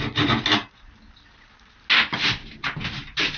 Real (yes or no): yes